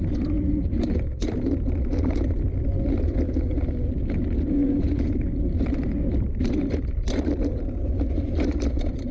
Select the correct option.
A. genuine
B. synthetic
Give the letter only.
A